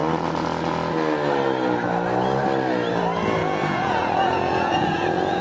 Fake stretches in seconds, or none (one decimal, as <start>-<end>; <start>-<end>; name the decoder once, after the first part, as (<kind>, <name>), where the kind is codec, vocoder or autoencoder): 3.4-5.4 (vocoder, Vocos)